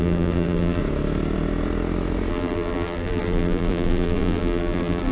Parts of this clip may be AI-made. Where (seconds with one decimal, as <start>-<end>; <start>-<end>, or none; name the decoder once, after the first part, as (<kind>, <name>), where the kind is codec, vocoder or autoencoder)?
0.0-0.8 (vocoder, BigVGAN v2); 2.3-5.1